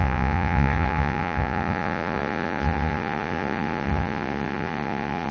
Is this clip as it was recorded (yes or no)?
no